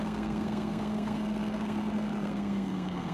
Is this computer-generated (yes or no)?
yes